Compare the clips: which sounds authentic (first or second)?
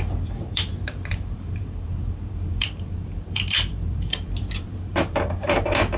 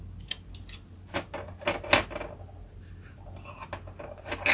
second